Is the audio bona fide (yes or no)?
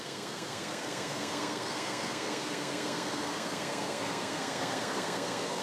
no